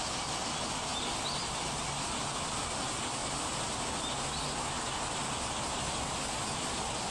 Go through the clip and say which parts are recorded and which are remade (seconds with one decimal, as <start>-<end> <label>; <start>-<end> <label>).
0.0-7.1 recorded

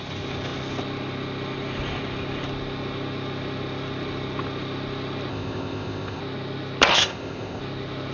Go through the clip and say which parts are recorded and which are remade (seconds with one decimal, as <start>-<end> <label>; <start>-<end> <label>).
0.0-5.3 recorded; 5.3-6.2 remade; 6.2-6.9 recorded; 6.9-7.6 remade; 7.6-8.1 recorded

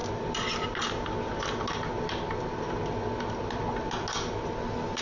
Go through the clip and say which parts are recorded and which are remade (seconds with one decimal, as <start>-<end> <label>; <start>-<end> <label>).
0.0-5.0 recorded

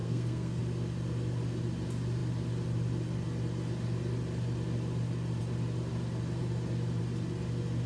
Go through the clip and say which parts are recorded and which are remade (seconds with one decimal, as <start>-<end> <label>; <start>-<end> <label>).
0.0-0.6 remade; 0.6-7.9 recorded

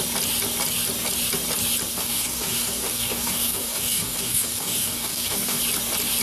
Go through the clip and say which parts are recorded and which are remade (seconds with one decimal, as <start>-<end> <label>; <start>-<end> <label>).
0.0-1.9 recorded; 1.9-5.6 remade; 5.6-6.2 recorded

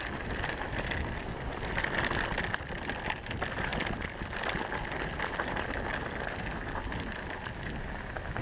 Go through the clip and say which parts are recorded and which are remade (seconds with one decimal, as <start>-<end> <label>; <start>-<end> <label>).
0.0-8.4 recorded